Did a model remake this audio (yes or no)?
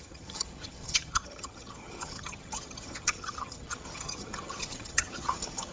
yes